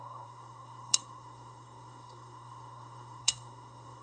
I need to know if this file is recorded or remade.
remade